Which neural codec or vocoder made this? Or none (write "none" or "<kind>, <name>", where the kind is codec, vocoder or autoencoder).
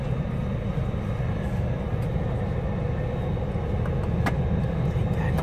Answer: none